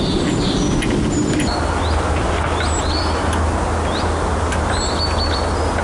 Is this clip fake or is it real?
real